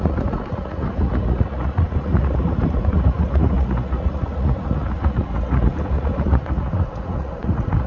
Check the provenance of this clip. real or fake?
fake